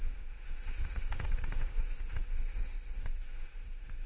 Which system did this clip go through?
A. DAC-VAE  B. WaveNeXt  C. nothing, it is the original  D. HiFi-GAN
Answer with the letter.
A